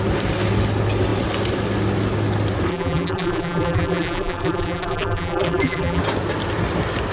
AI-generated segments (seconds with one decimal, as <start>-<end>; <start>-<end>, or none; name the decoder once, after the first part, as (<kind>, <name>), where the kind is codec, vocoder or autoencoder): 2.7-6.0 (vocoder, BigVGAN v2)